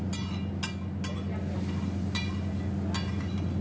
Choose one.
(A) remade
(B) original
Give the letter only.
B